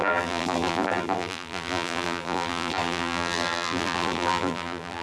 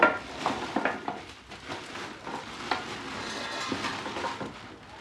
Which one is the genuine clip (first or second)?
second